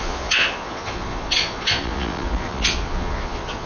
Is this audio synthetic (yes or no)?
yes